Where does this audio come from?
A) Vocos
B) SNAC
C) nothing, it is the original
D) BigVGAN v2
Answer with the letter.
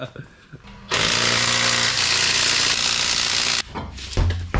C